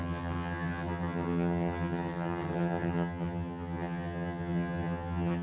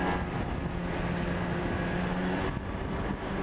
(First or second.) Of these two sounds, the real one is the second